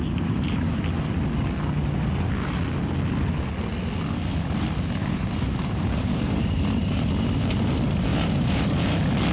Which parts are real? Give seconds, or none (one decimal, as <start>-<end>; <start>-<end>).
0.0-5.0; 7.1-8.1; 8.8-9.3